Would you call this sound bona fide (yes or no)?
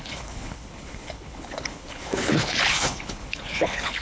no